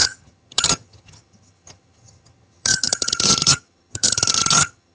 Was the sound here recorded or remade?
remade